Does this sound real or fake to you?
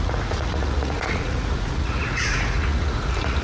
fake